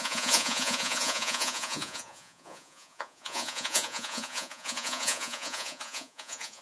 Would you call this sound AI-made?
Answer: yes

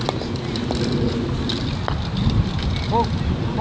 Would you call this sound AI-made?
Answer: no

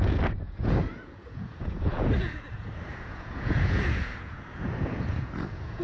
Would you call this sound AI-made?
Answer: yes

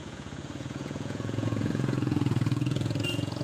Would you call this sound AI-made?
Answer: yes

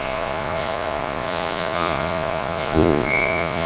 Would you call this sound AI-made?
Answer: yes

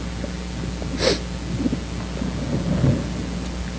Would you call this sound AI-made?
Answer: no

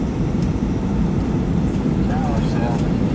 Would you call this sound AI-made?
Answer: no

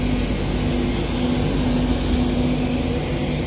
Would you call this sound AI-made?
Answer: no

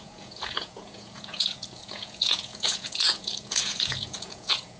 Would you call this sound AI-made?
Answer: yes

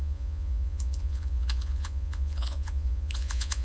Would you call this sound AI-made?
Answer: yes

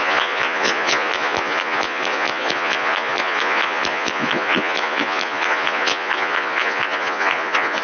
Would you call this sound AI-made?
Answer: yes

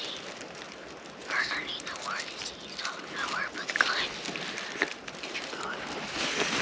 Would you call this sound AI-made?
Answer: no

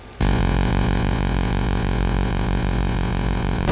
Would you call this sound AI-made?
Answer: yes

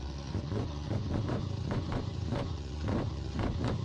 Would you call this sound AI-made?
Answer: yes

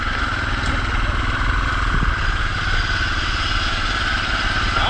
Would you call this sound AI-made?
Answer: no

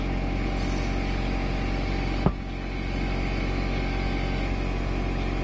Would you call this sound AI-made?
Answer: no